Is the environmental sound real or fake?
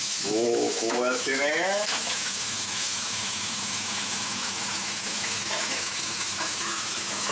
fake